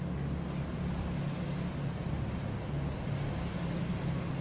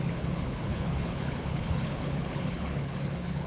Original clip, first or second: first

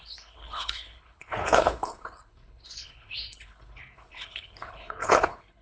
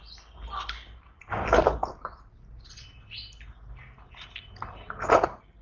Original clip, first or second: second